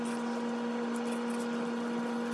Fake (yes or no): no